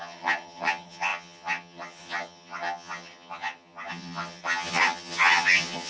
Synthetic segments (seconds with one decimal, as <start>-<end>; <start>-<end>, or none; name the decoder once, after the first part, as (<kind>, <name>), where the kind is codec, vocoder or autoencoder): 0.0-5.9 (vocoder, HiFi-GAN)